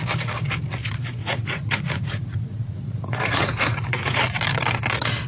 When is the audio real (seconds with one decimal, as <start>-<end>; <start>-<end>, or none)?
0.0-1.2; 4.2-5.3